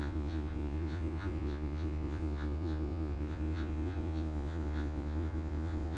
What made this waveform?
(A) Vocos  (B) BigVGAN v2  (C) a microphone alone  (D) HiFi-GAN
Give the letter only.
A